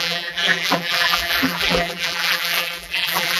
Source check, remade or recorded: remade